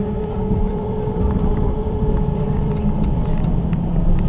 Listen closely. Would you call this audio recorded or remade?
remade